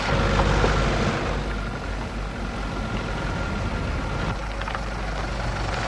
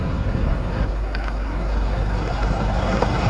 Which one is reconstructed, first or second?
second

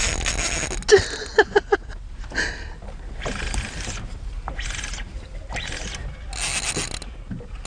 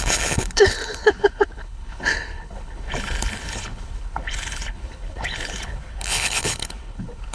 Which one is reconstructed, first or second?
second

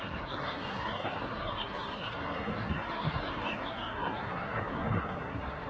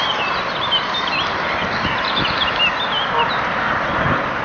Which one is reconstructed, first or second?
first